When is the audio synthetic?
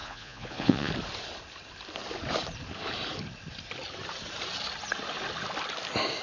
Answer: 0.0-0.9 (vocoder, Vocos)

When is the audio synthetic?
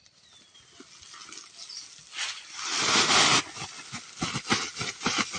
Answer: none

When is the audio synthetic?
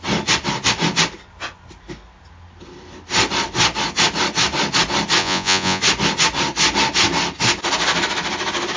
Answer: 5.2-5.8 (vocoder, Vocos)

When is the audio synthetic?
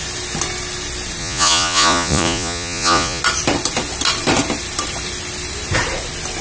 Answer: 1.2-3.2 (vocoder, Vocos)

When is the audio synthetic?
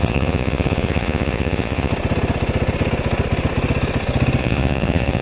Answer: 0.0-1.9 (vocoder, Vocos); 4.4-5.2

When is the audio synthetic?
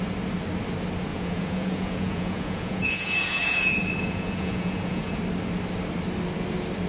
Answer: 1.1-5.2 (vocoder, Vocos)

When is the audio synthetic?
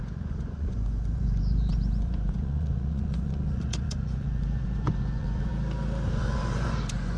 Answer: 0.0-5.5 (vocoder, Vocos); 6.1-7.2